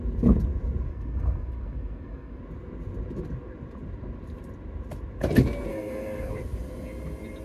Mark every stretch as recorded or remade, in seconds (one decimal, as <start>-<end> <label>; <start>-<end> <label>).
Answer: 0.0-0.9 recorded; 0.9-2.4 remade; 2.4-5.7 recorded; 5.7-6.3 remade; 6.3-7.4 recorded